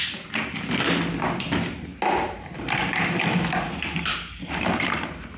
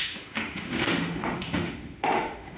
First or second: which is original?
first